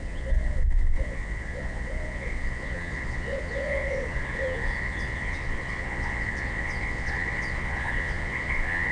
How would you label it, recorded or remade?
remade